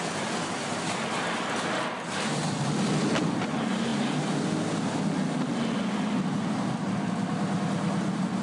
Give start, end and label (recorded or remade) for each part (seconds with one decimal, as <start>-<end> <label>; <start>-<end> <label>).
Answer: 0.0-8.4 recorded